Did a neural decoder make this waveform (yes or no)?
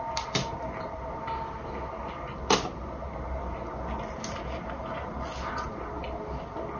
no